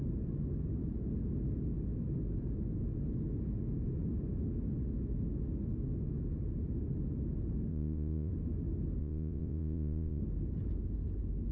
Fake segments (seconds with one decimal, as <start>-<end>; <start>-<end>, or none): 7.7-8.3; 9.0-10.2